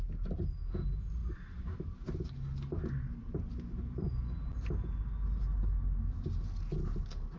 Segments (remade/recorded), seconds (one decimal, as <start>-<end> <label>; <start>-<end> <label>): 0.0-7.4 recorded

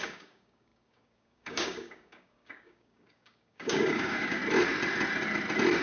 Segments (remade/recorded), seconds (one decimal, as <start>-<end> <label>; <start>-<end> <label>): 0.0-4.4 remade; 4.4-5.8 recorded

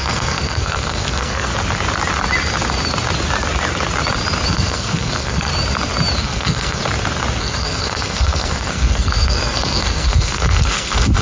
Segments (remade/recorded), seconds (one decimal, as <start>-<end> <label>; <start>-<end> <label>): 0.0-1.5 remade; 1.5-4.5 recorded; 4.5-5.5 remade; 5.5-6.2 recorded; 6.2-6.8 remade; 6.8-7.4 recorded; 7.4-11.2 remade

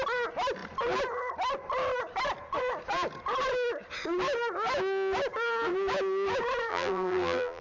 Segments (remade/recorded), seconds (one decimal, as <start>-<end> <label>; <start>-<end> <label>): 0.0-6.7 recorded; 6.7-7.6 remade

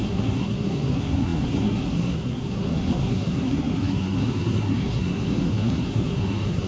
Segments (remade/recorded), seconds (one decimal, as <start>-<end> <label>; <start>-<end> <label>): 0.0-6.7 remade